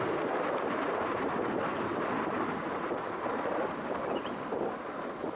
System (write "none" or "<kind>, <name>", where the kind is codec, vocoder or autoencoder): vocoder, BigVGAN v2